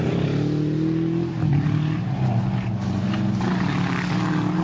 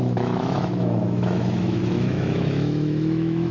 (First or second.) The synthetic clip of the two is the second